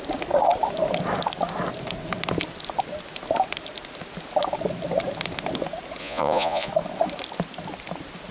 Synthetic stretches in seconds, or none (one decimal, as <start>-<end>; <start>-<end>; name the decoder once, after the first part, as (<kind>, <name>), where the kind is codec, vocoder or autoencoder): 6.0-6.7 (vocoder, Vocos)